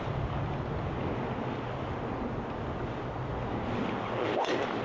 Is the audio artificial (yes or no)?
no